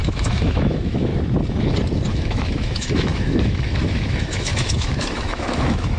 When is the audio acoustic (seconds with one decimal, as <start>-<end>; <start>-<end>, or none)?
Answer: 1.1-2.1